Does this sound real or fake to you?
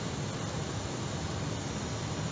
real